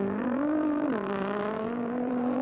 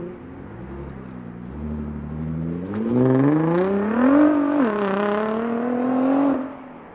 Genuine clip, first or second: second